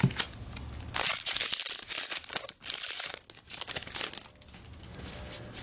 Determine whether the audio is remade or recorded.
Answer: recorded